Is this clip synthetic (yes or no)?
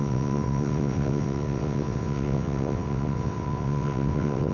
yes